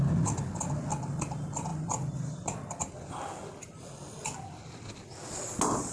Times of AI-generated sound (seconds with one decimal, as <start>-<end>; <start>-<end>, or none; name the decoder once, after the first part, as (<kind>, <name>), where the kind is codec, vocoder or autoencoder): none